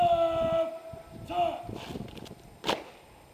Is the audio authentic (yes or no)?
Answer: yes